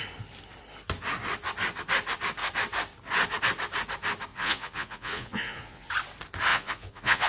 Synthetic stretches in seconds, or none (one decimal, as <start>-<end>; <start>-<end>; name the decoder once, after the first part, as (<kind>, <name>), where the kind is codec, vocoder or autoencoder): 4.3-5.9 (vocoder, Vocos); 6.5-7.3